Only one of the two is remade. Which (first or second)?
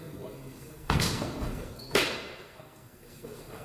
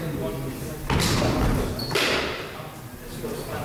first